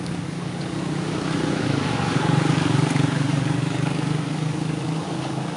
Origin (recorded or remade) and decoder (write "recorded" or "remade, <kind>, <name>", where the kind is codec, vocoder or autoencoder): remade, codec, DAC